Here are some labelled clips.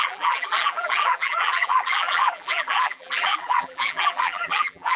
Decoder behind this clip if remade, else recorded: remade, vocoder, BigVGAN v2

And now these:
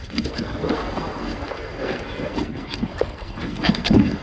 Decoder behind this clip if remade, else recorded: remade, codec, SNAC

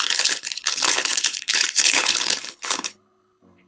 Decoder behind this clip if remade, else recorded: remade, codec, HILCodec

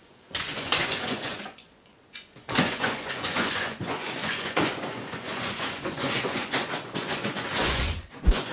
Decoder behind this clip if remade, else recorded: remade, vocoder, Vocos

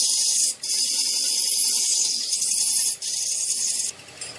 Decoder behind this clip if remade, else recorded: recorded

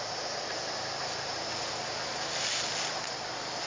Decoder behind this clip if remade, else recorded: recorded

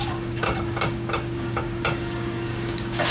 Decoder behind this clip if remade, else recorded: remade, codec, DAC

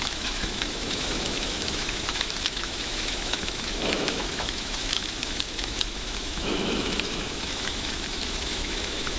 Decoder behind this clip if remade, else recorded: remade, autoencoder, DAC-VAE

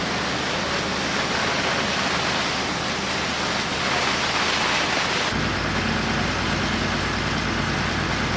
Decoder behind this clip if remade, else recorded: recorded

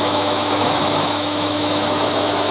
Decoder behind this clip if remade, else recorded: remade, autoencoder, DAC-VAE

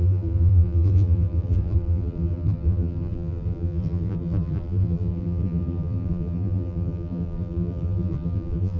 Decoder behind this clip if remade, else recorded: remade, vocoder, BigVGAN v2